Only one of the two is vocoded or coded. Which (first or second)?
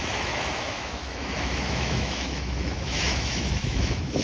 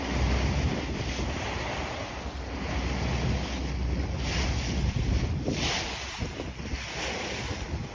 first